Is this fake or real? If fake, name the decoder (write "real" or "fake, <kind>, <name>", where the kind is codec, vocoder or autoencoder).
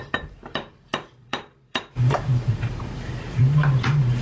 fake, vocoder, BigVGAN v2